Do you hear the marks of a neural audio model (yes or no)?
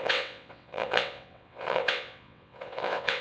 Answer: yes